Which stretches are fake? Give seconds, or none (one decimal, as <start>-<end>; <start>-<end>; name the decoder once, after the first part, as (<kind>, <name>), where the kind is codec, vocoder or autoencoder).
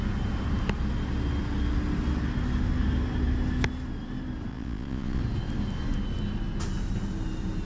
4.5-5.2 (vocoder, Vocos)